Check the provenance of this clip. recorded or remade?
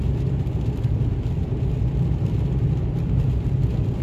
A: recorded